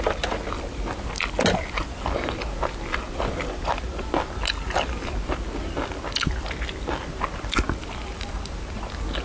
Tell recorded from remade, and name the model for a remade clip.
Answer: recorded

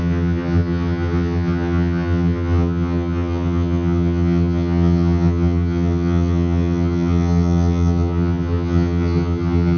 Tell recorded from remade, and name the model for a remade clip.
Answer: remade, vocoder, HiFi-GAN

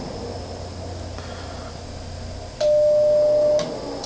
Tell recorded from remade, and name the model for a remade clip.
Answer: recorded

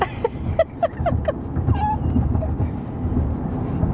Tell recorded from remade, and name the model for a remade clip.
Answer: recorded